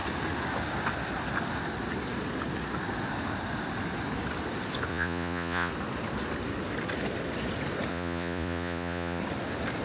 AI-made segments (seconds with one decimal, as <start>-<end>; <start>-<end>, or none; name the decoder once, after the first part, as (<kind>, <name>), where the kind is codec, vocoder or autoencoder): 4.9-5.7 (vocoder, Vocos); 7.9-9.2

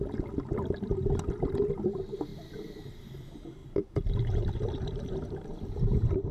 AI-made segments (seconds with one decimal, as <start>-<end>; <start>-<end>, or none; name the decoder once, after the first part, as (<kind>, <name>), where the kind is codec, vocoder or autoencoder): 2.3-3.0 (vocoder, BigVGAN v2); 3.6-6.3

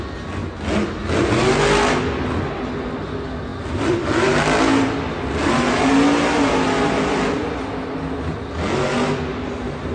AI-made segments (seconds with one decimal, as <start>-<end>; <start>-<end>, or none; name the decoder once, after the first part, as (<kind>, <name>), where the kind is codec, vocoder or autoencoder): 3.5-4.6 (vocoder, BigVGAN v2); 9.3-9.9

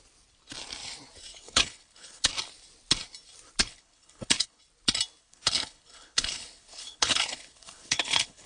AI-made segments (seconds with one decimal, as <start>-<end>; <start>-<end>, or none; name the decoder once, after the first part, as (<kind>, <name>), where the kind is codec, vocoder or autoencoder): 1.3-2.3 (codec, HILCodec); 3.6-4.6; 5.2-8.5